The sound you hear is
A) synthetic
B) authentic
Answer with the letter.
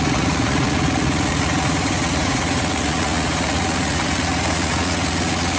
A